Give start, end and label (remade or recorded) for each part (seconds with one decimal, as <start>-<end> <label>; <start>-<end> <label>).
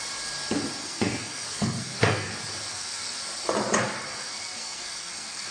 0.0-0.8 recorded; 0.8-2.3 remade; 2.3-2.7 recorded; 2.7-3.2 remade; 3.2-4.2 recorded; 4.2-5.5 remade